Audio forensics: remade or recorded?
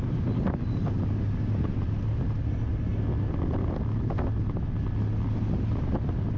recorded